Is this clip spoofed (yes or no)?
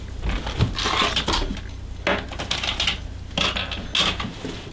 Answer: no